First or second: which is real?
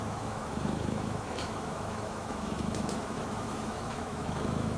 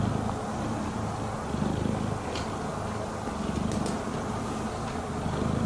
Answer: second